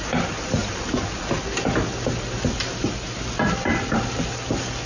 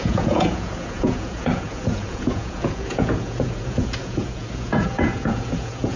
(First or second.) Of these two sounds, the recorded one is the first